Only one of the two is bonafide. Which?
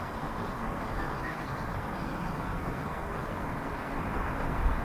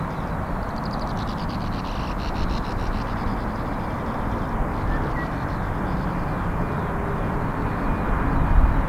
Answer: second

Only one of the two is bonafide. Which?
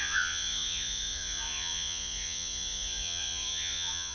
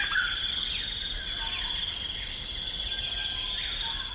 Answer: second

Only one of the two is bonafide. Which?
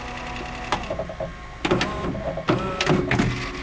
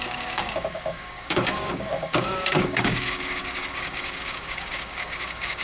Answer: first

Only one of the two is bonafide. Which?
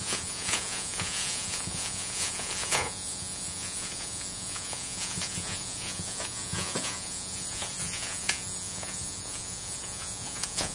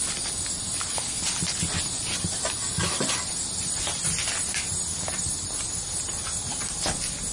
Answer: second